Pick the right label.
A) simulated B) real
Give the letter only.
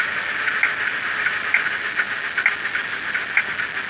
B